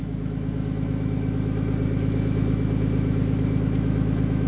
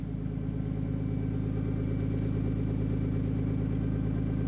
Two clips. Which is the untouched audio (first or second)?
second